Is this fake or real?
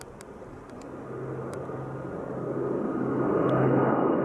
real